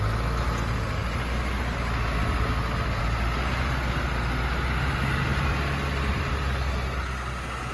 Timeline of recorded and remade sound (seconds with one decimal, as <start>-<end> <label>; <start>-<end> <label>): 0.0-7.7 recorded